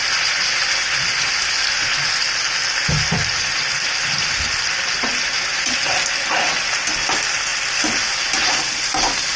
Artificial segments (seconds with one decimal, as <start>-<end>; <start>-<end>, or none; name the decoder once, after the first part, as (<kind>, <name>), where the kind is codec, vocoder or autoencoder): 2.6-4.9 (vocoder, BigVGAN v2)